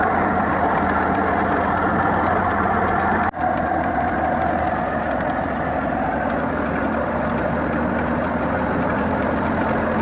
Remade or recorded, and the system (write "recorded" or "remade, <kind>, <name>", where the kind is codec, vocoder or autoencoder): recorded